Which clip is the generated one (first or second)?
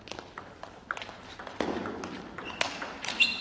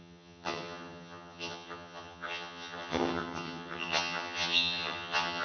second